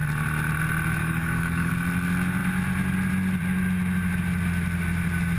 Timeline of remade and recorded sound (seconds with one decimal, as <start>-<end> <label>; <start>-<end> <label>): 0.0-1.0 recorded; 1.0-1.7 remade; 1.7-5.4 recorded